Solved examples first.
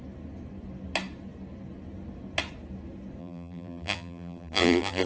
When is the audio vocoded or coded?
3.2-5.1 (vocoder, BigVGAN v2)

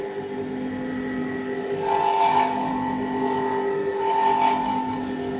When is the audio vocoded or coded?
1.2-2.7 (codec, DAC); 3.2-4.0; 4.6-5.4

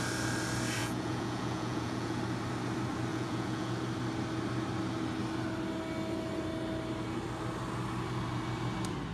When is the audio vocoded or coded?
0.8-2.2 (vocoder, Vocos); 3.1-3.8

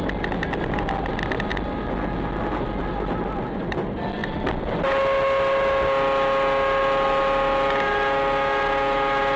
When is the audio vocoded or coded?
none

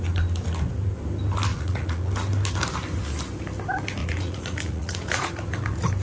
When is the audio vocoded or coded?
1.5-2.1 (vocoder, Vocos); 4.0-5.3

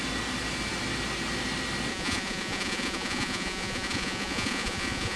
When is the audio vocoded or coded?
1.9-5.2 (vocoder, Vocos)